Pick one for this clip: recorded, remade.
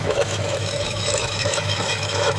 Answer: remade